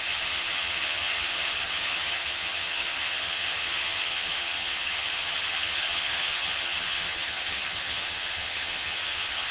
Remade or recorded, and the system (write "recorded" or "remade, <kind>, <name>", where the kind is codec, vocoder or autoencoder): remade, vocoder, HiFi-GAN